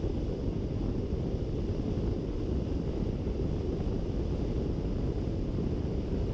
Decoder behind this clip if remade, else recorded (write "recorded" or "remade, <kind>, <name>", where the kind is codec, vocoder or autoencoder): recorded